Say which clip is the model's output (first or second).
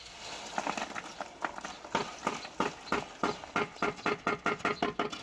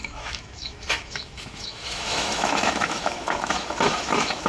second